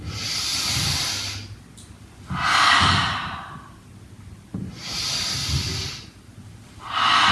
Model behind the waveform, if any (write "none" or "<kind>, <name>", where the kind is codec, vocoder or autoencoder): none